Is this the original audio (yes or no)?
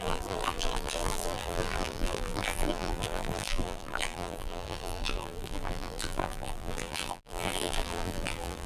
no